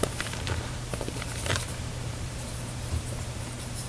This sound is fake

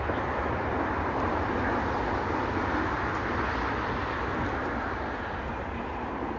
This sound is real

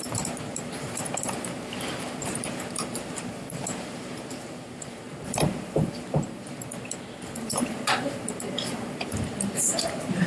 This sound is fake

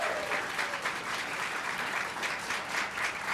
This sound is fake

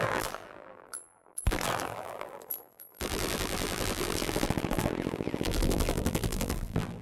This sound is fake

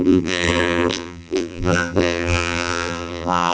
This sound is fake